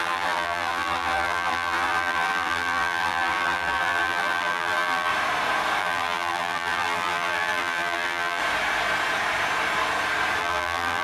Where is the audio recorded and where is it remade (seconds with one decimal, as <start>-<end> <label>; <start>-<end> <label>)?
0.0-5.1 remade; 5.1-5.8 recorded; 5.8-8.4 remade; 8.4-10.4 recorded; 10.4-11.0 remade